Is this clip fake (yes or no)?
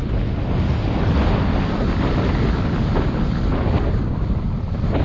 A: no